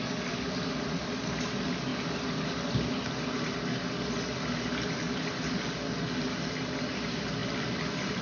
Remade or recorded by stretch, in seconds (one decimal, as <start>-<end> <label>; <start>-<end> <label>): 0.0-8.2 recorded